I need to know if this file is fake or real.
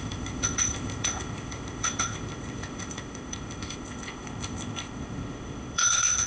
fake